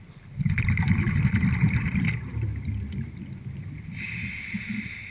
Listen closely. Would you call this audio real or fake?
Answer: real